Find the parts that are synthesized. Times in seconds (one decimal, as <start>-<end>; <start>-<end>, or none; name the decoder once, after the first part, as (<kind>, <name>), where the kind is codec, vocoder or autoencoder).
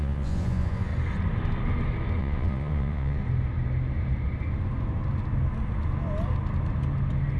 0.0-0.9 (vocoder, Vocos); 2.2-3.2